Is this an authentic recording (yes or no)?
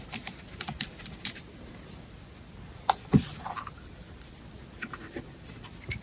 no